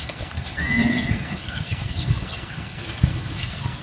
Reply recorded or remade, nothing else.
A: remade